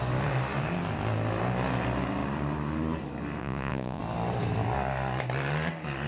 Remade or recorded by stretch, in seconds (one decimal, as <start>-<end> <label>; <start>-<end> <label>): 0.0-3.4 recorded; 3.4-4.0 remade; 4.0-6.1 recorded